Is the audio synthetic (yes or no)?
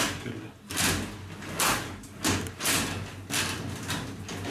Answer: no